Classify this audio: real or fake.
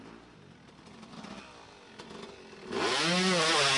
real